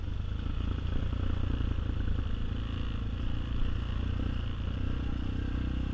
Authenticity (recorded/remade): recorded